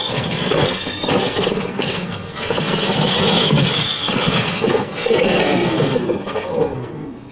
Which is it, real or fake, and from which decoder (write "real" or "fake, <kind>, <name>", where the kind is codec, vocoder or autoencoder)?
fake, codec, SNAC